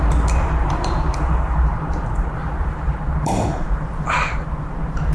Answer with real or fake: fake